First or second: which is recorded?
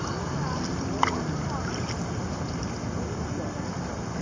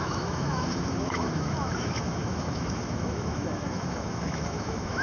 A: first